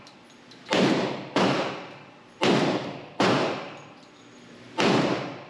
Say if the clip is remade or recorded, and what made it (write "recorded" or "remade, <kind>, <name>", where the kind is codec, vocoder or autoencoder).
recorded